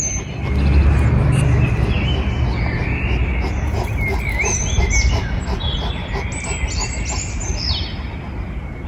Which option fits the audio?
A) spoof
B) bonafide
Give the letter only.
B